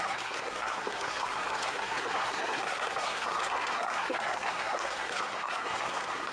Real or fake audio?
fake